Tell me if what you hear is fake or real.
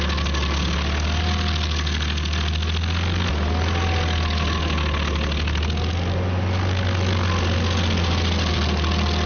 real